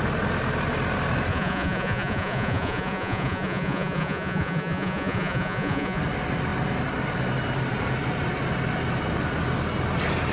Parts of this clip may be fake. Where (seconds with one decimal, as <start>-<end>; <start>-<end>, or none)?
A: 1.3-6.0